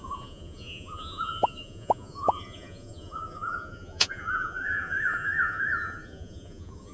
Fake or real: fake